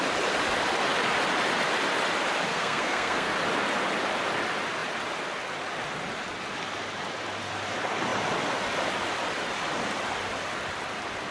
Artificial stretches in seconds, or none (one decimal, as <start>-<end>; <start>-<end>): 2.5-3.3

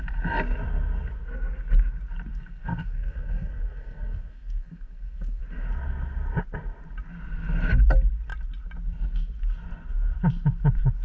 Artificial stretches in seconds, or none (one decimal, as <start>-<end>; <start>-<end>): 2.3-5.4

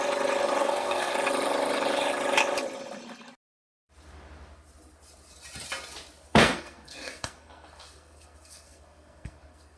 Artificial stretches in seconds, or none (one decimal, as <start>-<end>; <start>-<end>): 0.6-1.1; 6.3-9.8

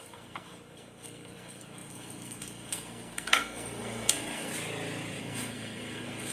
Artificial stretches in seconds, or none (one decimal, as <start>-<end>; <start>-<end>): 0.0-4.5; 5.2-6.3

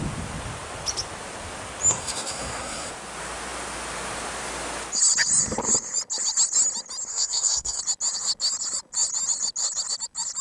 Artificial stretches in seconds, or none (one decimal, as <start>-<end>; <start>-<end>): 1.9-2.9; 7.1-7.8

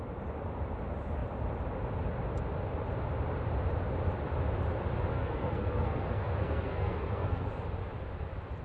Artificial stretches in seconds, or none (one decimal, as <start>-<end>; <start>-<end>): 5.1-7.5

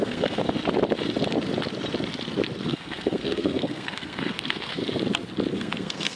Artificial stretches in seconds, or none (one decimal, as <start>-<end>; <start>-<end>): 0.0-0.4; 2.6-4.8; 5.5-6.2